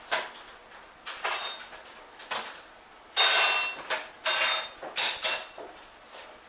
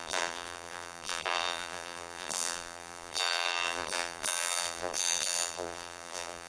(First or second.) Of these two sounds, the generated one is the second